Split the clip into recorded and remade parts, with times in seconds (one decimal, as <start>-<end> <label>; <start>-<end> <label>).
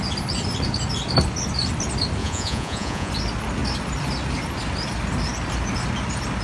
0.0-2.2 recorded; 2.2-3.1 remade; 3.1-6.4 recorded